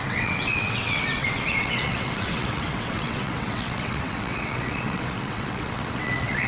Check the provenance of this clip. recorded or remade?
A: remade